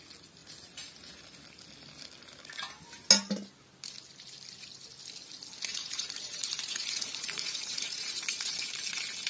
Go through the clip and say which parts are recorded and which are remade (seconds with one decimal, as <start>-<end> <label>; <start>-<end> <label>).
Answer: 0.0-5.7 recorded; 5.7-8.7 remade; 8.7-9.3 recorded